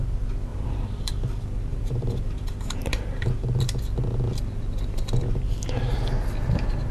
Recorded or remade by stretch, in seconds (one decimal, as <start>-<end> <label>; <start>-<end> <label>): 0.0-0.5 recorded; 0.5-1.1 remade; 1.1-1.7 recorded; 1.7-3.6 remade; 3.6-6.9 recorded